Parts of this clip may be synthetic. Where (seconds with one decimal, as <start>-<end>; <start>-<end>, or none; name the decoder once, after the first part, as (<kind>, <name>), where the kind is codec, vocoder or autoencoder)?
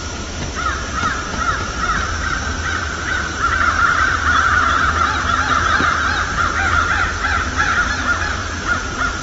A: 1.3-2.1 (vocoder, BigVGAN v2); 2.8-7.1; 8.4-9.2